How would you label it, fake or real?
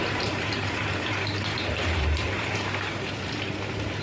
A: fake